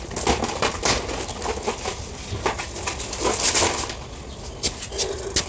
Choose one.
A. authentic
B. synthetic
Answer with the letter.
A